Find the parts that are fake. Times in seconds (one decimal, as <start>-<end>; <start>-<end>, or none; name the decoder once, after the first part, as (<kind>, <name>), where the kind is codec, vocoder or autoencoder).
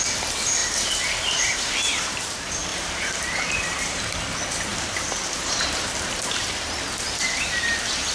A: 0.6-2.3 (vocoder, BigVGAN v2); 2.7-4.0; 4.7-6.8